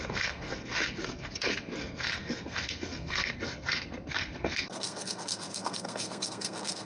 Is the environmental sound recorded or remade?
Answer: remade